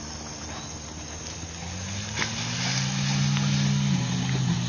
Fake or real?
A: real